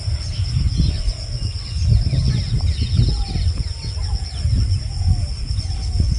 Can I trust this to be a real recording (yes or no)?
yes